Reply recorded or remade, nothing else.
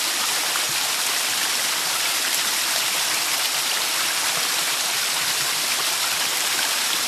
recorded